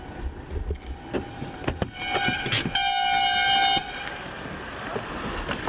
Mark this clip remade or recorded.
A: recorded